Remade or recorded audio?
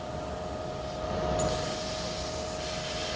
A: recorded